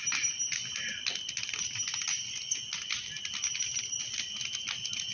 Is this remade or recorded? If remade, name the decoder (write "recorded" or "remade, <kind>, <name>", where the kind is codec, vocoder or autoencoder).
recorded